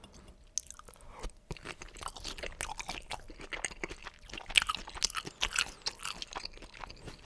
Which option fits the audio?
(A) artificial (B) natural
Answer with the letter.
B